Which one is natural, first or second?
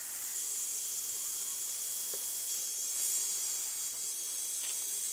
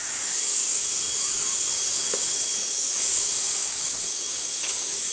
first